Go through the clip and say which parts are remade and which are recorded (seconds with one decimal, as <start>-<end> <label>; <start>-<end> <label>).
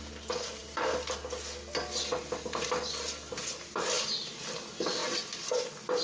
0.0-6.0 recorded